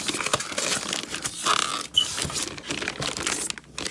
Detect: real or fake real